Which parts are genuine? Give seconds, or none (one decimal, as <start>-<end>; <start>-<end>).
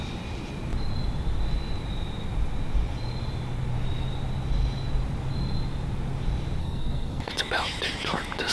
0.0-6.6; 7.3-8.5